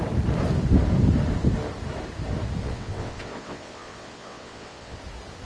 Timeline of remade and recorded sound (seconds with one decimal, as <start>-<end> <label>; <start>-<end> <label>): 0.0-2.6 recorded; 2.6-5.0 remade; 5.0-5.5 recorded